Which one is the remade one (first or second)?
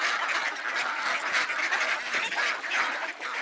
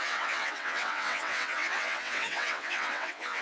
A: second